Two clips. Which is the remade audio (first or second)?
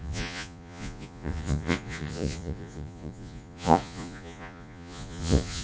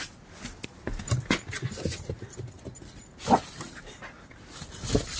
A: first